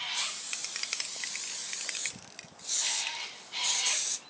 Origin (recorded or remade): recorded